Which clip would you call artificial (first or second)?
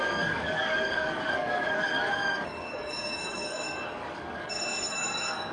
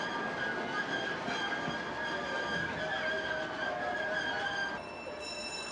first